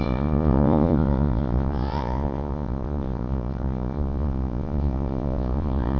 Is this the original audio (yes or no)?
no